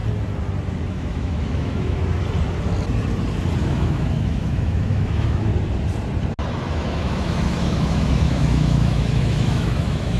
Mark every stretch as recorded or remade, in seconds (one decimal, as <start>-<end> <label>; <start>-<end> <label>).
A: 0.0-0.9 recorded; 0.9-2.0 remade; 2.0-3.6 recorded; 3.6-5.5 remade; 5.5-6.7 recorded; 6.7-10.2 remade